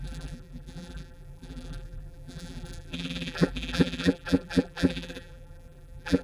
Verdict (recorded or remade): remade